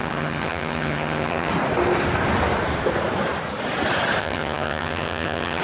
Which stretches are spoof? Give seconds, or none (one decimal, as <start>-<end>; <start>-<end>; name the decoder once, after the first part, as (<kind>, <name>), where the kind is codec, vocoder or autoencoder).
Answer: 0.0-1.5 (vocoder, HiFi-GAN); 4.2-5.6